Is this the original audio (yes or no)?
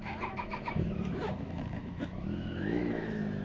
no